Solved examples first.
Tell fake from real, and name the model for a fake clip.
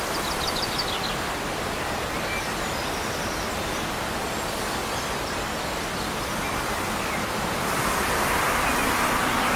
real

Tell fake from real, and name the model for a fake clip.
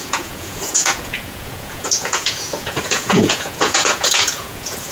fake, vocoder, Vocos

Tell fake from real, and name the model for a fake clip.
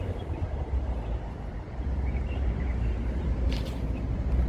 fake, vocoder, BigVGAN v2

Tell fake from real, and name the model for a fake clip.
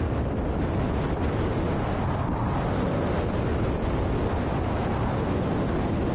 real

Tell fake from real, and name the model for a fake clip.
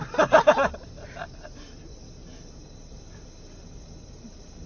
real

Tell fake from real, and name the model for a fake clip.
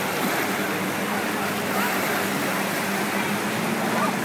real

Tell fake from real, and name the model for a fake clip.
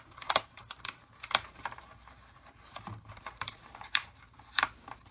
fake, vocoder, BigVGAN v2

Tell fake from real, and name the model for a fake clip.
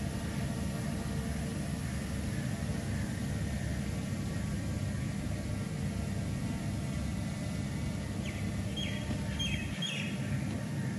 real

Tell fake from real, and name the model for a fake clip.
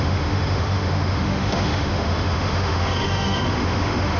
fake, autoencoder, DAC-VAE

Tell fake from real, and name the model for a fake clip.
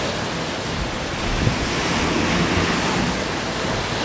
real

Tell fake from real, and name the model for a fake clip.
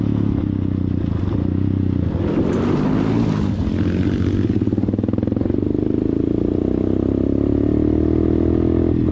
real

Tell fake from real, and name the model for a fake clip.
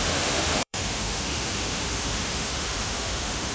fake, autoencoder, DAC-VAE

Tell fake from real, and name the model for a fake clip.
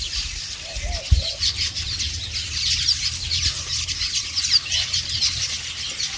fake, vocoder, BigVGAN v2